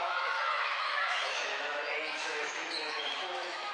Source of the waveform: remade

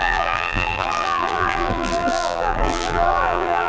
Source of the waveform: remade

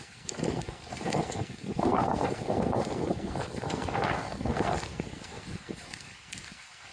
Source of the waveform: remade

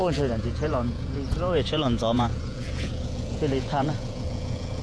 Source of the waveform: remade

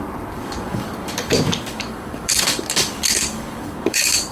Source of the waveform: remade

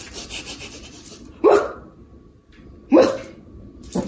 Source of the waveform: remade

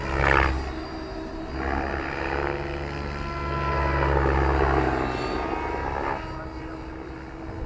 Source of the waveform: recorded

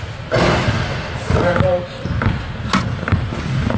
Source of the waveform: recorded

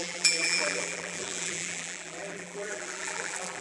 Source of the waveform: remade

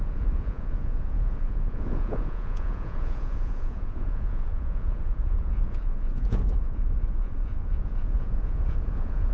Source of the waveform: remade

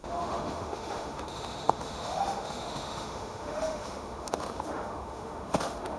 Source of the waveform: remade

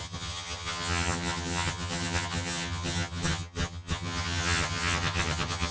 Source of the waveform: remade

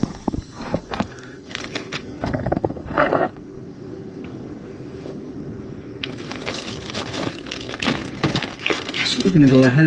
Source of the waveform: remade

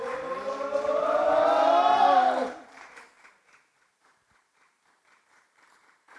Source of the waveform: remade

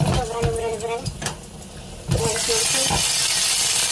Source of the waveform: recorded